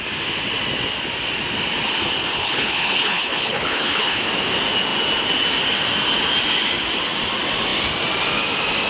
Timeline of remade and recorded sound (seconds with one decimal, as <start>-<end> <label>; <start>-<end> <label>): 0.0-2.3 recorded; 2.3-4.2 remade; 4.2-8.9 recorded